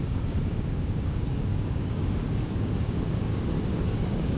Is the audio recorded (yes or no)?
no